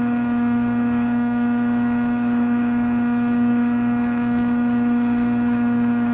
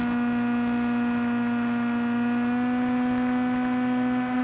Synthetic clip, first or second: first